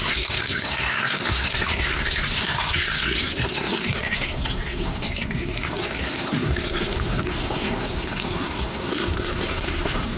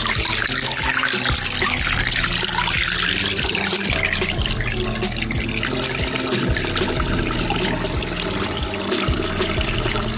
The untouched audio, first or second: second